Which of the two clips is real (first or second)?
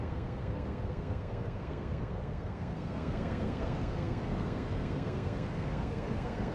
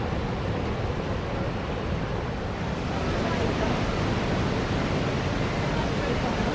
second